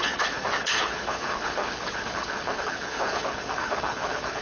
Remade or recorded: remade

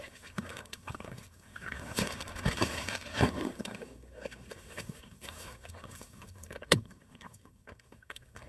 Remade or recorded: remade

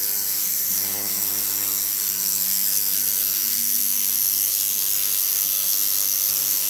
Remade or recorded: remade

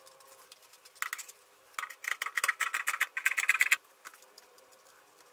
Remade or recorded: recorded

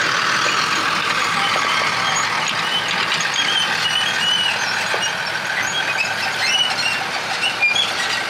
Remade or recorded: recorded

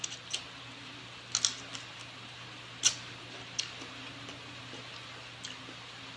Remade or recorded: recorded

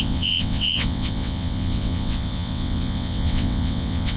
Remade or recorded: remade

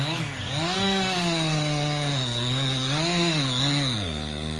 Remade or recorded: remade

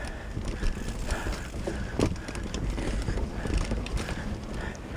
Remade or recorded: recorded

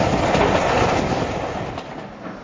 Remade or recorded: recorded